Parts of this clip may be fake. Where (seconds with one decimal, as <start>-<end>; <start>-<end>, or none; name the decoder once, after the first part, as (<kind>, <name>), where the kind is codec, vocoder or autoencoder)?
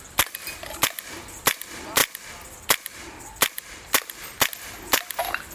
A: none